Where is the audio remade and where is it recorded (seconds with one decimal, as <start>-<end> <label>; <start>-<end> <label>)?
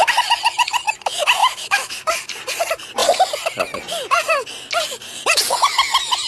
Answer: 0.0-1.4 recorded; 1.4-2.0 remade; 2.0-6.3 recorded